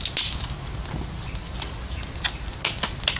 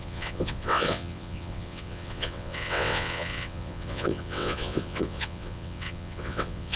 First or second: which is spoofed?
second